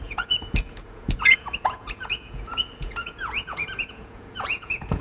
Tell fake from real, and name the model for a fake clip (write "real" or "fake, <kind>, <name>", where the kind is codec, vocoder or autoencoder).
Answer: fake, vocoder, Vocos